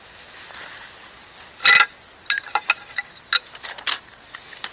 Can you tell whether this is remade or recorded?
recorded